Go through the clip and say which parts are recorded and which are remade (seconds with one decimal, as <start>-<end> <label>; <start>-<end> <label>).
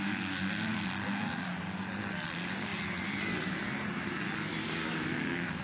0.0-4.6 recorded; 4.6-5.6 remade